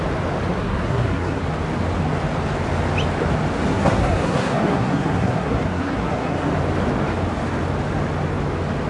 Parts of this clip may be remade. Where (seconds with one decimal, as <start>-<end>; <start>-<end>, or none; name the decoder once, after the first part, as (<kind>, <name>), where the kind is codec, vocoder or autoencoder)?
0.6-1.4 (codec, SNAC); 3.7-6.5